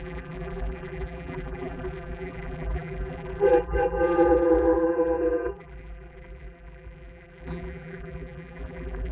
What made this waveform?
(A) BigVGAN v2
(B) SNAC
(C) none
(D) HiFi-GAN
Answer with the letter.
A